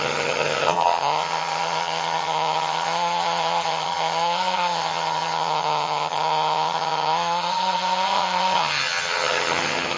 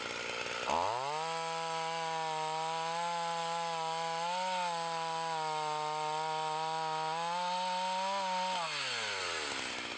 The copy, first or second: first